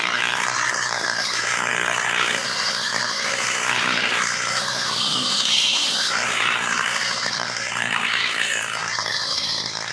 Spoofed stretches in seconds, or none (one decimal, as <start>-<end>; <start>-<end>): 0.0-9.9